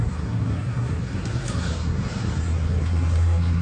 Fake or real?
fake